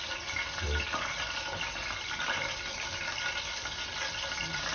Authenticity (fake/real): real